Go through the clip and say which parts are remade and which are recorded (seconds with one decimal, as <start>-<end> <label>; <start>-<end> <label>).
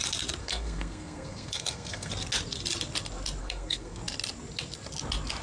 0.0-0.4 recorded; 0.4-2.1 remade; 2.1-3.4 recorded; 3.4-4.0 remade; 4.0-5.4 recorded